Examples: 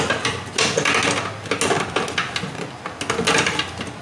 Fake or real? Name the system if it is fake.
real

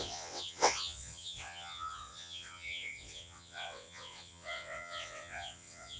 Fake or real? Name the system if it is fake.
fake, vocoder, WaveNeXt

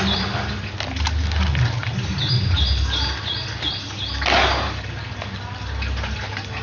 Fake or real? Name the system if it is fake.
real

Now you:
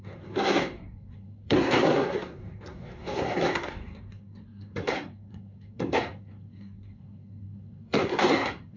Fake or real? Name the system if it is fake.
fake, codec, SNAC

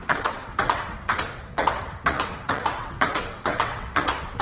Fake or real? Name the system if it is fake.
fake, vocoder, WaveNeXt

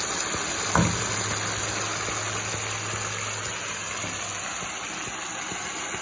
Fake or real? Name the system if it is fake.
real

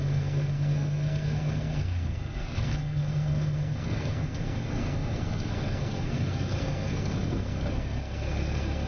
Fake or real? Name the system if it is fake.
fake, codec, SNAC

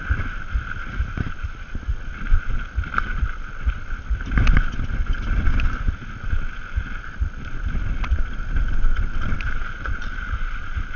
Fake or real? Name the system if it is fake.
real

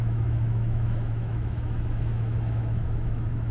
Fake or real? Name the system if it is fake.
fake, autoencoder, DAC-VAE